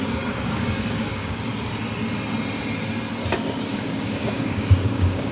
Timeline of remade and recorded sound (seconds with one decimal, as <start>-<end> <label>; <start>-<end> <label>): 0.0-1.5 remade; 1.5-3.7 recorded; 3.7-5.3 remade